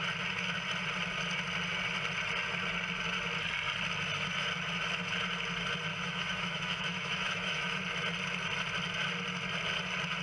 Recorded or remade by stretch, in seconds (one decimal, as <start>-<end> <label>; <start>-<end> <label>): 0.0-5.9 recorded; 5.9-7.8 remade; 7.8-10.2 recorded